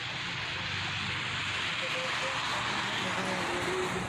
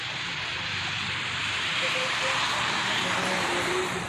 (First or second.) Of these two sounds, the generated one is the second